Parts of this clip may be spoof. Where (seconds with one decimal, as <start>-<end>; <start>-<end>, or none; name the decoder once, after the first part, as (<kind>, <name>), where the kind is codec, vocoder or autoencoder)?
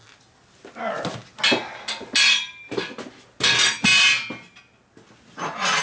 none